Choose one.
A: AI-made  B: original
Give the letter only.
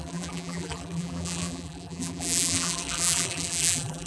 A